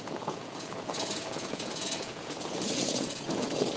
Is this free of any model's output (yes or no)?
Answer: no